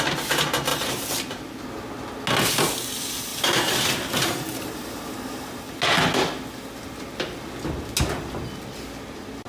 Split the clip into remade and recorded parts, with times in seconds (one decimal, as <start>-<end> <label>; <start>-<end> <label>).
0.0-0.7 recorded; 0.7-1.7 remade; 1.7-3.3 recorded; 3.3-5.5 remade; 5.5-9.5 recorded